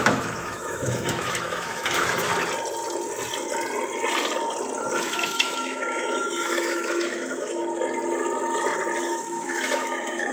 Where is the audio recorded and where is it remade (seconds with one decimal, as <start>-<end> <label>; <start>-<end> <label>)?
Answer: 0.0-2.3 remade; 2.3-5.0 recorded; 5.0-7.6 remade; 7.6-9.0 recorded; 9.0-10.3 remade